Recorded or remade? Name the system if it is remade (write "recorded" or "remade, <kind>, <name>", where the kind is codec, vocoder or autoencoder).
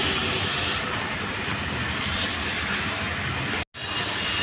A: recorded